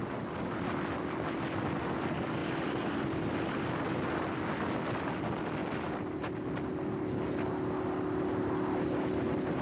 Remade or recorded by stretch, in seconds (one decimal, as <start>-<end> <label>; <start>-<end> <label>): 0.0-9.6 recorded